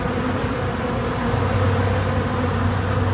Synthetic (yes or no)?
no